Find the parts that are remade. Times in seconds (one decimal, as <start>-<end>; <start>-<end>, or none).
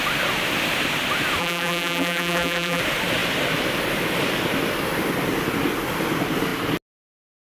1.4-2.8